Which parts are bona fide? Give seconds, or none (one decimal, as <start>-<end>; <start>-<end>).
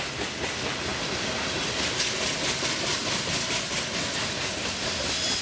0.0-5.4